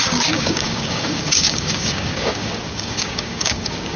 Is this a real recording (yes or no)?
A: no